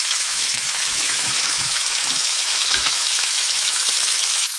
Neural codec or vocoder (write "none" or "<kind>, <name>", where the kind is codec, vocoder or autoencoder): autoencoder, DAC-VAE